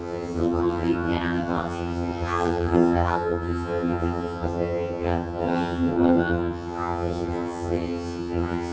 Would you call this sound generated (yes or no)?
yes